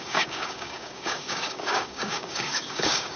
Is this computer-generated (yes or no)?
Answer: yes